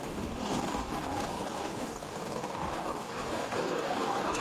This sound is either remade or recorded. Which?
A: remade